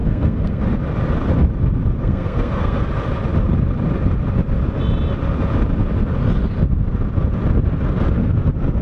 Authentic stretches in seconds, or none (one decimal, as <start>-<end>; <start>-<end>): 0.6-2.0; 2.8-8.8